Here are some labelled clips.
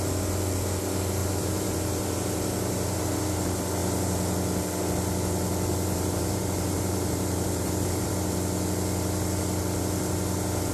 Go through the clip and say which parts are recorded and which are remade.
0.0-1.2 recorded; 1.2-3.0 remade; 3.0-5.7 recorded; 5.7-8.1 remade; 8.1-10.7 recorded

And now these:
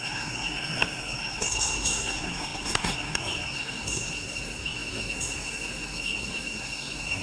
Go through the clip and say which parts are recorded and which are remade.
0.0-7.2 remade

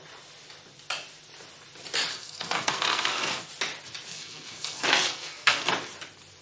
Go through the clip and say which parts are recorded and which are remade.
0.0-2.1 recorded; 2.1-3.5 remade; 3.5-4.1 recorded; 4.1-5.7 remade; 5.7-6.4 recorded

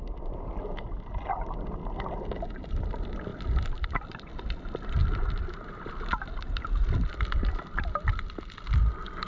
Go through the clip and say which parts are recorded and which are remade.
0.0-3.3 recorded; 3.3-4.3 remade; 4.3-5.0 recorded; 5.0-7.1 remade; 7.1-9.3 recorded